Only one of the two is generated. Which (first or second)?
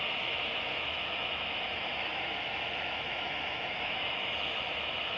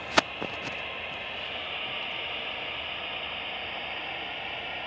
first